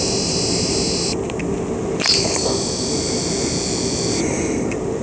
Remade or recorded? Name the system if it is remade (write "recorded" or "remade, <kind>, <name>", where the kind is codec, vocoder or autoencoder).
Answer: recorded